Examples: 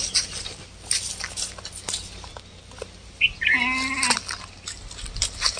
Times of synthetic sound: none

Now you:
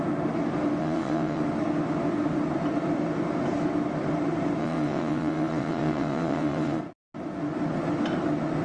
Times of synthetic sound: 0.8-1.4 (vocoder, WaveNeXt); 4.6-6.8

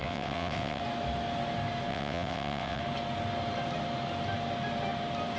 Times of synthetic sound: 0.0-0.8 (vocoder, WaveNeXt); 1.9-2.8